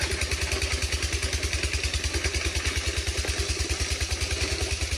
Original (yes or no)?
yes